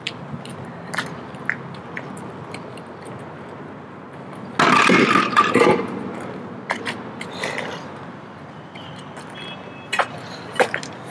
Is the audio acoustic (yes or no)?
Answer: yes